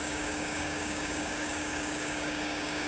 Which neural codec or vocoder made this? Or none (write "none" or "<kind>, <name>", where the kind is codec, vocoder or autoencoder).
codec, DAC